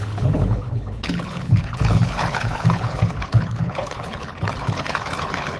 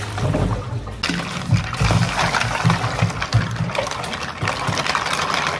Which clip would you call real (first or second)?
second